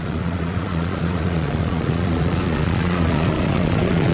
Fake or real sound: fake